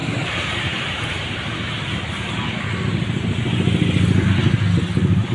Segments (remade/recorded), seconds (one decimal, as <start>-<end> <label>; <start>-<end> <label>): 0.0-1.7 remade; 1.7-5.3 recorded